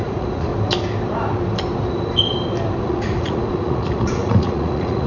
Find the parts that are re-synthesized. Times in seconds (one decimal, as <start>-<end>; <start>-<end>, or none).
0.0-0.5; 2.8-5.1